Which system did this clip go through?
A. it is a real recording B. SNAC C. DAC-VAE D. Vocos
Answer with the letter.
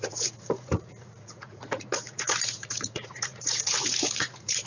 D